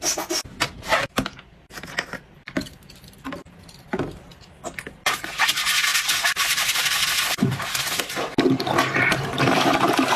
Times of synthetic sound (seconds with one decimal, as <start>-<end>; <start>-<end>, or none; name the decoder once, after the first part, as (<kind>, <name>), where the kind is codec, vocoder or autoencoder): none